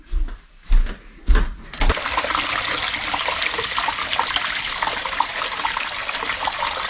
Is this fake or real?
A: real